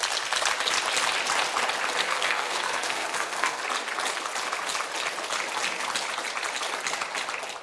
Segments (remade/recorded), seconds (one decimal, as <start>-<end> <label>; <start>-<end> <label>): 0.0-2.0 recorded; 2.0-3.6 remade; 3.6-7.6 recorded